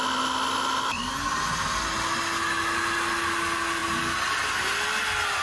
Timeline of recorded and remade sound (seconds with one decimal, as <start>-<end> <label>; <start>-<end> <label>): 0.0-5.4 recorded